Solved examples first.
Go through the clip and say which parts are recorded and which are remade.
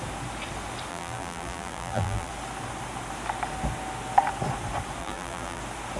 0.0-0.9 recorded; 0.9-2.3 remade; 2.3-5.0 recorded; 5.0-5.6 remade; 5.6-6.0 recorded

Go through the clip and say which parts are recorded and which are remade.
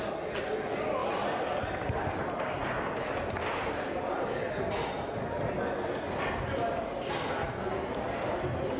0.0-1.0 recorded; 1.0-5.6 remade; 5.6-8.8 recorded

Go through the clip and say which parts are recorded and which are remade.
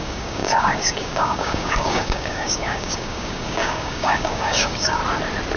0.0-5.0 remade; 5.0-5.6 recorded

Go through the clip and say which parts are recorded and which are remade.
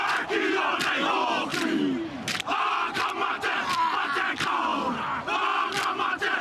0.0-1.5 recorded; 1.5-2.6 remade; 2.6-6.4 recorded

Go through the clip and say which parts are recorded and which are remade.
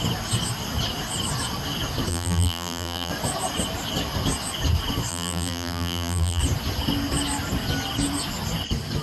0.0-2.1 recorded; 2.1-3.1 remade; 3.1-5.1 recorded; 5.1-6.4 remade; 6.4-9.0 recorded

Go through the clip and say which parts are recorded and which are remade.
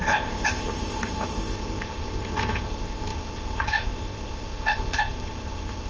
0.0-5.9 remade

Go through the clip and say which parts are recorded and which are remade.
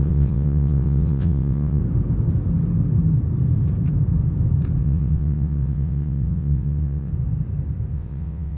0.0-1.8 remade; 1.8-4.8 recorded; 4.8-7.1 remade; 7.1-7.9 recorded; 7.9-8.6 remade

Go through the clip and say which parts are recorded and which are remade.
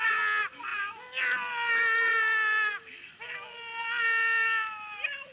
0.0-5.3 recorded